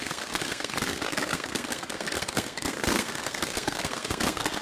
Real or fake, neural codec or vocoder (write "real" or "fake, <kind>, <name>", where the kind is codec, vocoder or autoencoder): fake, codec, SNAC